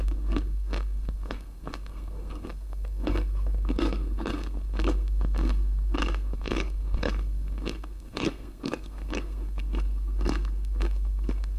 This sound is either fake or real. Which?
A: fake